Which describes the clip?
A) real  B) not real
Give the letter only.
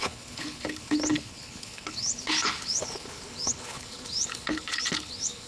B